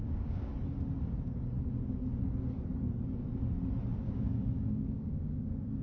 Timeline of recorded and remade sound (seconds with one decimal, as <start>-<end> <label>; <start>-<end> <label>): 0.0-0.5 remade; 0.5-4.0 recorded; 4.0-5.8 remade

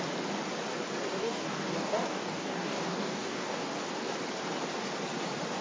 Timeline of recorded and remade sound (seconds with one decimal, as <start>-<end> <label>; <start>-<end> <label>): 0.0-1.2 recorded; 1.2-3.7 remade; 3.7-5.6 recorded

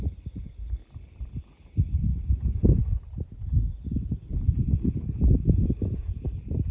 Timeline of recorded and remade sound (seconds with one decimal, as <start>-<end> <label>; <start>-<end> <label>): 0.0-6.7 recorded

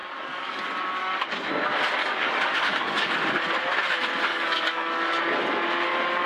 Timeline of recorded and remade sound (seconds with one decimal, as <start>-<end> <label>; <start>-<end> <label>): 0.0-0.6 remade; 0.6-1.0 recorded; 1.0-1.5 remade; 1.5-2.0 recorded; 2.0-3.1 remade; 3.1-4.3 recorded; 4.3-5.2 remade; 5.2-6.3 recorded

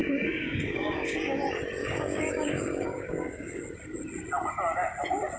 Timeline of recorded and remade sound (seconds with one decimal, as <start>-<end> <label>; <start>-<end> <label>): 0.0-1.4 remade; 1.4-1.8 recorded; 1.8-3.6 remade; 3.6-5.4 recorded

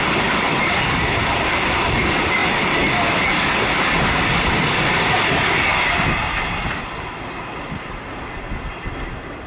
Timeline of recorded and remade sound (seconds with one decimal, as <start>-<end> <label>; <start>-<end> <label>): 0.0-9.5 recorded